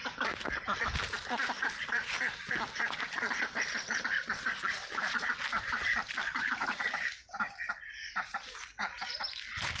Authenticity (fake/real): fake